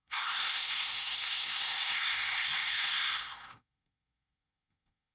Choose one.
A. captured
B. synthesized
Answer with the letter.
B